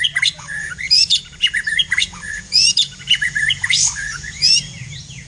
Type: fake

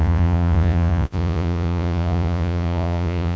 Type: fake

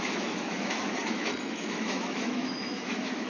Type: fake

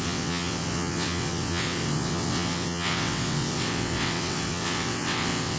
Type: fake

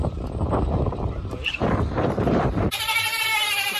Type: fake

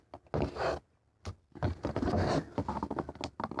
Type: real